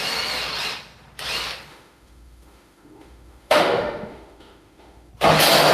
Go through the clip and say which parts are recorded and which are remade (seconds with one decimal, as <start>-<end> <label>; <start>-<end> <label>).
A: 0.0-1.7 recorded; 1.7-5.1 remade; 5.1-5.7 recorded